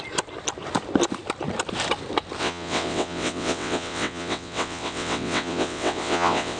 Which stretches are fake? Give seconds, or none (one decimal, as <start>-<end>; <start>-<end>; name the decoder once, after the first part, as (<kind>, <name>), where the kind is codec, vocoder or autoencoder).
2.4-6.6 (vocoder, WaveNeXt)